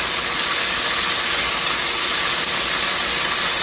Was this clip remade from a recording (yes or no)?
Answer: no